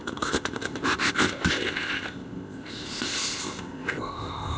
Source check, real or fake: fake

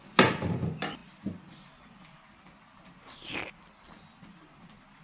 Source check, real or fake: real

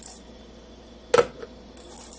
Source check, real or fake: real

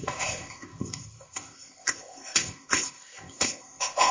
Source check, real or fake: fake